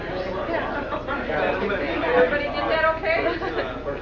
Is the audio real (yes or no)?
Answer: yes